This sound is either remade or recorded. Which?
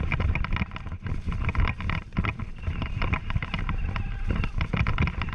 recorded